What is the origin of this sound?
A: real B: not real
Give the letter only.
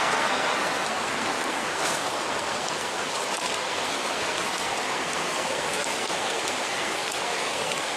B